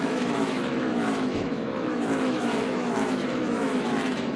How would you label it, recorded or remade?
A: remade